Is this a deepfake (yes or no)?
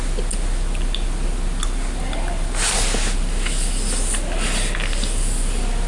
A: no